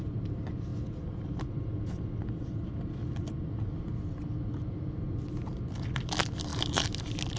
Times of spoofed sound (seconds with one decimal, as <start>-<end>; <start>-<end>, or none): none